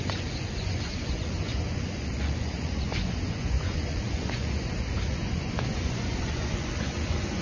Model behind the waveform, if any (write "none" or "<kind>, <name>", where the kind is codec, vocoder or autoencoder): vocoder, Vocos